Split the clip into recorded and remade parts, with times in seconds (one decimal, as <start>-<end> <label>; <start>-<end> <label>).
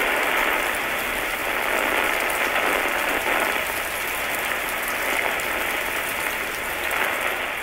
0.0-7.6 recorded